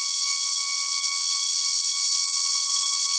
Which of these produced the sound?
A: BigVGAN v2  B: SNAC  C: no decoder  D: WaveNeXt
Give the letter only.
D